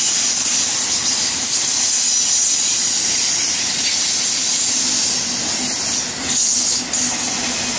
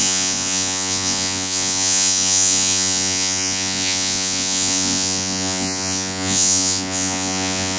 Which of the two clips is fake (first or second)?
second